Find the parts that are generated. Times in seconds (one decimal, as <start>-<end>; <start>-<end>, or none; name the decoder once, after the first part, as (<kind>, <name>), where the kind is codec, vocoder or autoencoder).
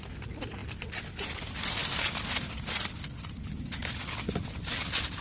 none